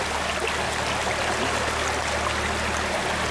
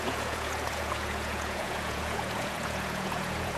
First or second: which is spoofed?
second